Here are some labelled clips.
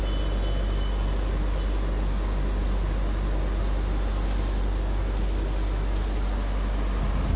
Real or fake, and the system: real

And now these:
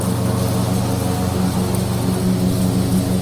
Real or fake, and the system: real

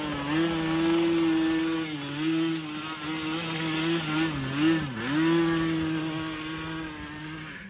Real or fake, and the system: real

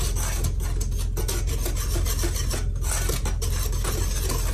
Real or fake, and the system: real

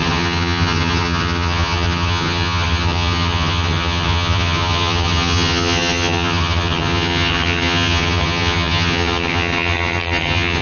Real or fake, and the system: fake, vocoder, HiFi-GAN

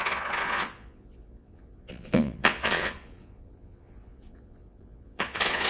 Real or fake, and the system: fake, vocoder, Vocos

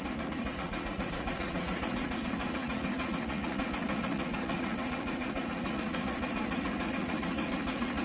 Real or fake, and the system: fake, vocoder, Vocos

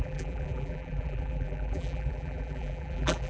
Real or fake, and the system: fake, vocoder, BigVGAN v2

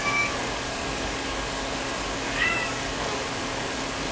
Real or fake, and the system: fake, codec, DAC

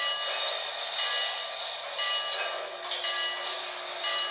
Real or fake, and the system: real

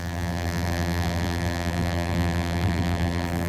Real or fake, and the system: fake, vocoder, BigVGAN v2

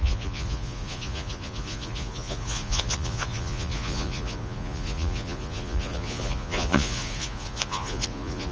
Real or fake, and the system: fake, vocoder, Vocos